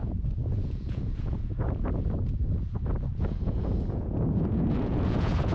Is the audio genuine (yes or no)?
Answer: no